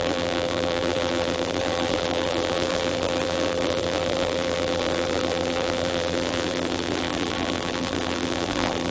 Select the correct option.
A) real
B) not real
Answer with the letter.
B